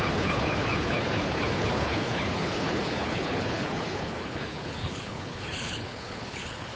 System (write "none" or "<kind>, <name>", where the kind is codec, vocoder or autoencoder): codec, HILCodec